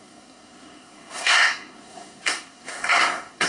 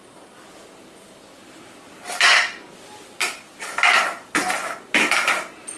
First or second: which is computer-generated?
first